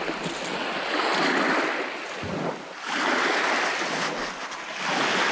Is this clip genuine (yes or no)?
yes